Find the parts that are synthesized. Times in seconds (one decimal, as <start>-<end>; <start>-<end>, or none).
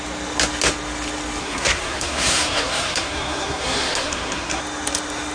1.4-4.6